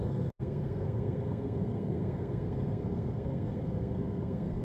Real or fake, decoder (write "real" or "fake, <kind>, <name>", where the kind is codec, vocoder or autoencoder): fake, codec, SNAC